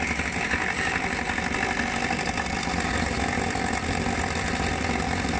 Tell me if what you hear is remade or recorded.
recorded